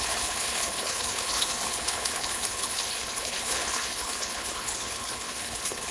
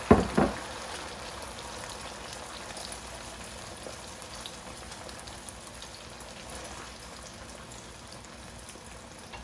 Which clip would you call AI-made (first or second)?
first